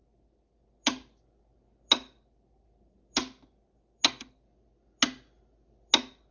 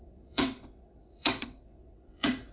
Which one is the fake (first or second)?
second